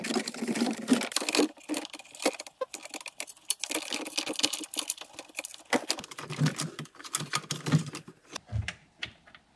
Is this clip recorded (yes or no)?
yes